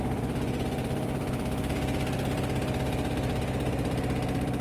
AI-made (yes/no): yes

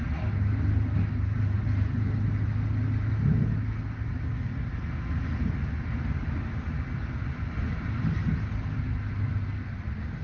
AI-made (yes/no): no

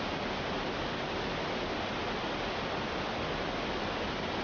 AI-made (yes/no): no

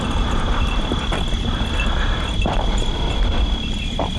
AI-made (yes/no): yes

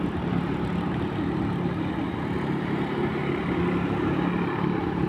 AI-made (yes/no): no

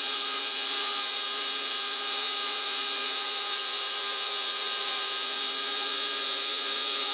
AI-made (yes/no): yes